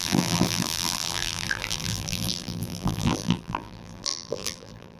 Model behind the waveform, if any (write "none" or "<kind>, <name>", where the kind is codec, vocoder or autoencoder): vocoder, BigVGAN v2